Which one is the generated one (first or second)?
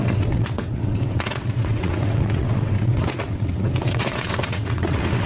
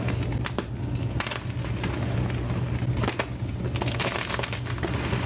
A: first